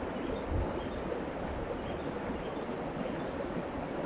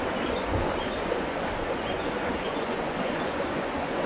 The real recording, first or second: first